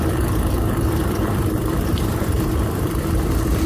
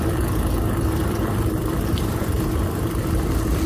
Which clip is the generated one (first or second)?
first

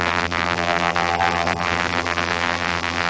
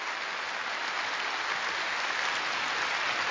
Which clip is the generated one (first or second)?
first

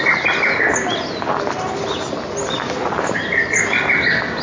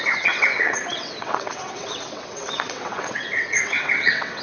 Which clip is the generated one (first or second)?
second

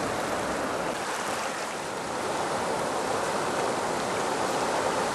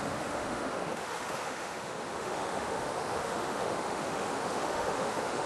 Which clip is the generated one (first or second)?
second